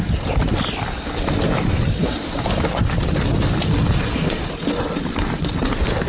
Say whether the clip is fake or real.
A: real